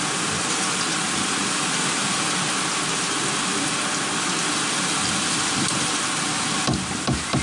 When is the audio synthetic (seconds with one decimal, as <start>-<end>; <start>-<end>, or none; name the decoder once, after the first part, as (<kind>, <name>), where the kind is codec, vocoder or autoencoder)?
none